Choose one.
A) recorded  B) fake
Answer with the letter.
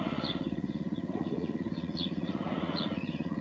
B